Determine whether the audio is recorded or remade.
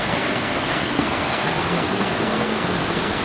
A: remade